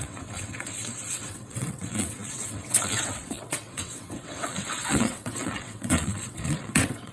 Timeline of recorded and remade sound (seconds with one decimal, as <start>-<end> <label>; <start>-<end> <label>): 0.0-7.1 remade